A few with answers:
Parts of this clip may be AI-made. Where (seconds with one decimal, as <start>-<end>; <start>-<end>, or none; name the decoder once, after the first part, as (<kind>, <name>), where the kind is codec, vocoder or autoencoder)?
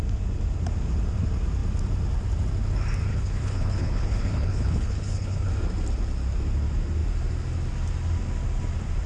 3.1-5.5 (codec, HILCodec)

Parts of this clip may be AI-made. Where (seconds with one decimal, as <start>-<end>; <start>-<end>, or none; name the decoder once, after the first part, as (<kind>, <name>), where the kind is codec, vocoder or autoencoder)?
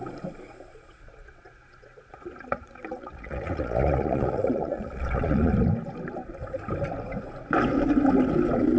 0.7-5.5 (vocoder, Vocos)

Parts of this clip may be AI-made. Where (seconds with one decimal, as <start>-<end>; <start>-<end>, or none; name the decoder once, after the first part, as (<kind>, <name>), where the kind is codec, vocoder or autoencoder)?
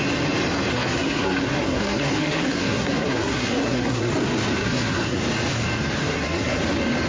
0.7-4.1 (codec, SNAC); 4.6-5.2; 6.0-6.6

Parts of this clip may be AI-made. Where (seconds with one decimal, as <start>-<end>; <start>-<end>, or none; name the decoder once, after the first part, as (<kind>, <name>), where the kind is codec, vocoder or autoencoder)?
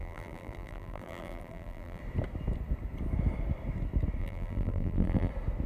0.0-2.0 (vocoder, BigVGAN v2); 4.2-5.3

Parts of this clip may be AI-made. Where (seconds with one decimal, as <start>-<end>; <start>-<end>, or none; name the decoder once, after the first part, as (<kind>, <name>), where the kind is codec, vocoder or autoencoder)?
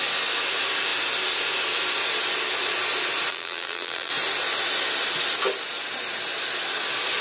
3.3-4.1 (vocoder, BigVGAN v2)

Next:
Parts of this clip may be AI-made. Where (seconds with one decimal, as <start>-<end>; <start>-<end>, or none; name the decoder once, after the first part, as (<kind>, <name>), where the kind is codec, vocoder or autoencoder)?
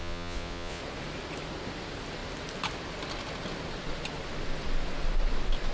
0.0-0.8 (vocoder, Vocos)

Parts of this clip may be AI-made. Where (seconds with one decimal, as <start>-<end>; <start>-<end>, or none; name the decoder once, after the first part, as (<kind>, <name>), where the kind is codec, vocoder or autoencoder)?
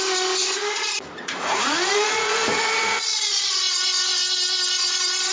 0.4-3.6 (vocoder, Vocos)